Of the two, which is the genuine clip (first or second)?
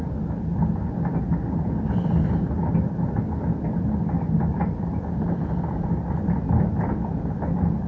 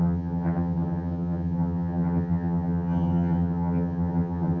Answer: first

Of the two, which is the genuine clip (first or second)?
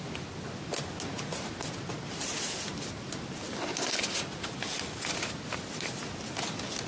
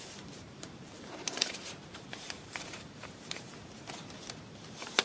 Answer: first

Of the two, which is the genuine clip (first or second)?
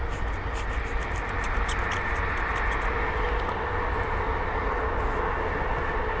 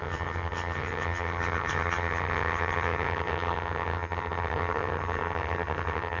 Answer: first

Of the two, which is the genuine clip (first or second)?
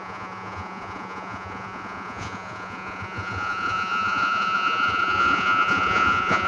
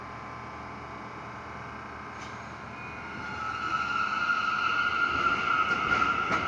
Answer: second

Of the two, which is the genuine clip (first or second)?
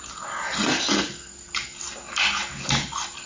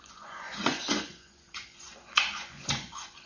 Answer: first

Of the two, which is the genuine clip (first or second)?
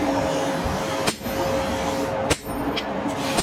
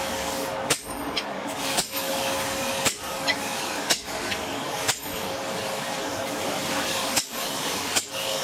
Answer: first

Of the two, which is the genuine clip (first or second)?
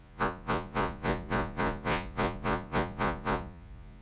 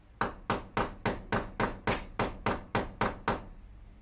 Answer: second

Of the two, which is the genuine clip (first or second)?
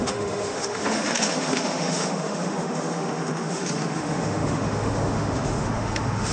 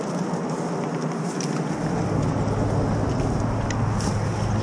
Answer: second